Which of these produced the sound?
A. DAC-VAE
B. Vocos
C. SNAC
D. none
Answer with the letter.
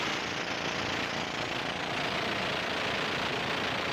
D